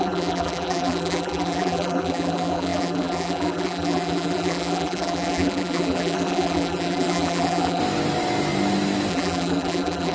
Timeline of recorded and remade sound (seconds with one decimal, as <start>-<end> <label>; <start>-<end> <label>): 0.0-7.8 remade; 7.8-9.1 recorded; 9.1-10.1 remade